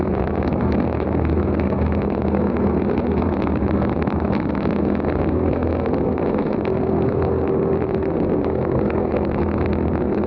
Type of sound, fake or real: fake